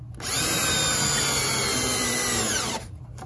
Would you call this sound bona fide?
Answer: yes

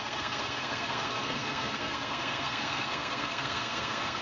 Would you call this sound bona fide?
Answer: no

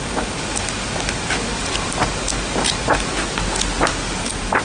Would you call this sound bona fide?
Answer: yes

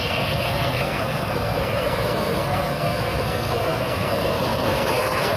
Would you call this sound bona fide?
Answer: no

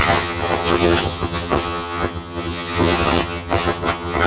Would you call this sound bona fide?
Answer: no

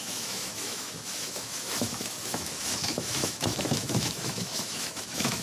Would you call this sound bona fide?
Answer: no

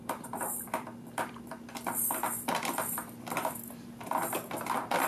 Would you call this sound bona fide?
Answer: no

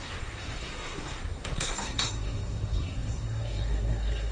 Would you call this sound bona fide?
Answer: no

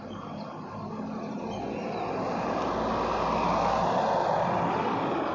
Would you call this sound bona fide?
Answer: yes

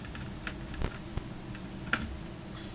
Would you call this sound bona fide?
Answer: yes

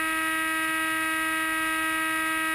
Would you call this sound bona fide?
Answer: yes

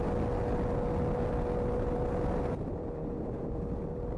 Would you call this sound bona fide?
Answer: yes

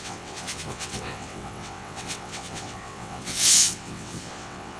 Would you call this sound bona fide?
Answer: no